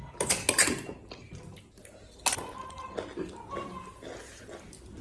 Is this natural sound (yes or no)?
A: yes